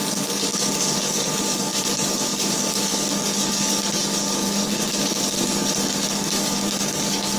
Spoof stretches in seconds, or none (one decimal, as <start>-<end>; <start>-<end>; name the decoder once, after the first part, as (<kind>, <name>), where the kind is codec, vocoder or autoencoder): 0.0-7.4 (codec, DAC)